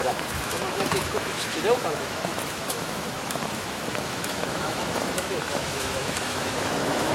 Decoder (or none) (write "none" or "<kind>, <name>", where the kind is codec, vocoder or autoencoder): autoencoder, DAC-VAE